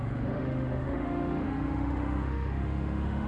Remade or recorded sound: remade